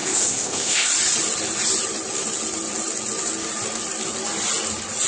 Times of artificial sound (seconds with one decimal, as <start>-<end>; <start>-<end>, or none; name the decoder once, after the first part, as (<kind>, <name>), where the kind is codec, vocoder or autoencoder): 0.0-0.9 (codec, ZipCodec)